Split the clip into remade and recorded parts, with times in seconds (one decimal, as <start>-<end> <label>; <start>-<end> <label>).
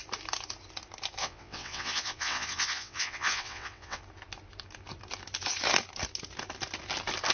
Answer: 0.0-1.2 recorded; 1.2-4.0 remade; 4.0-7.3 recorded